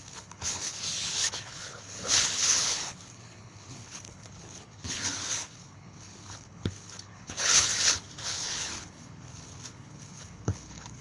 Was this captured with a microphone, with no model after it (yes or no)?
no